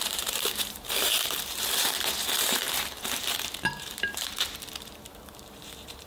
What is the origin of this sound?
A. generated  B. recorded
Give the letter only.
A